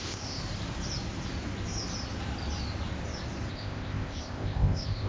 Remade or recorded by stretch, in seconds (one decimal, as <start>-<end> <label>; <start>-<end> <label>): 0.0-0.4 remade; 0.4-3.5 recorded; 3.5-5.1 remade